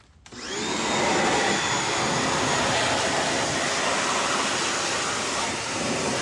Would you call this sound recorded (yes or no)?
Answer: yes